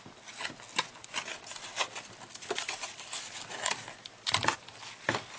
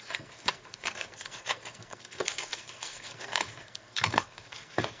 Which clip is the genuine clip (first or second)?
first